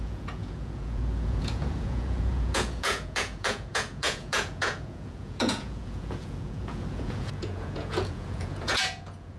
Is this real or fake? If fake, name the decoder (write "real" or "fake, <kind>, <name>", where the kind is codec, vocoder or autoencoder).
fake, vocoder, Vocos